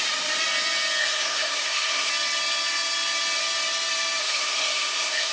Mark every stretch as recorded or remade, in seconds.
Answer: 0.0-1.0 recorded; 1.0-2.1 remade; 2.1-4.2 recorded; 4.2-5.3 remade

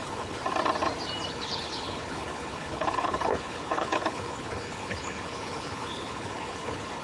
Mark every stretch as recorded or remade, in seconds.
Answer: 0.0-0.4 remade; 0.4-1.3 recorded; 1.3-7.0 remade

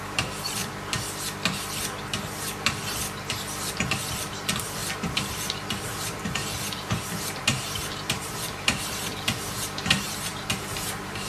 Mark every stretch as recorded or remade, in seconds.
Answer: 0.0-0.6 remade; 0.6-4.1 recorded; 4.1-4.8 remade; 4.8-5.3 recorded; 5.3-11.3 remade

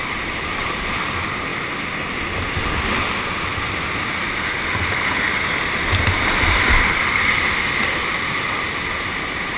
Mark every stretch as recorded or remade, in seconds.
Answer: 0.0-9.6 recorded

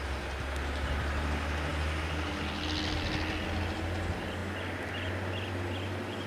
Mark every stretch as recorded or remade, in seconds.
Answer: 0.0-6.3 recorded

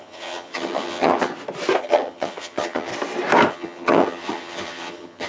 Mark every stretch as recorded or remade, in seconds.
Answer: 0.0-1.3 remade; 1.3-1.8 recorded; 1.8-2.9 remade; 2.9-3.5 recorded; 3.5-5.3 remade

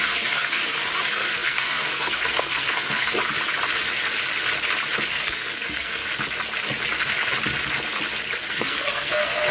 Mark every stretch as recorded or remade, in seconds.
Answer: 0.0-3.1 remade; 3.1-5.1 recorded; 5.1-6.0 remade; 6.0-8.5 recorded; 8.5-9.5 remade